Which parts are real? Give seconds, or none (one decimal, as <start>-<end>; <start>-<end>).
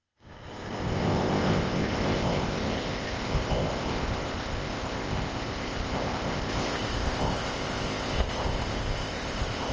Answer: none